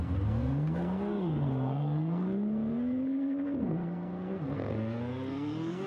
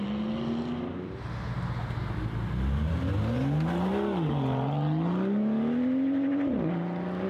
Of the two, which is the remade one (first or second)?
first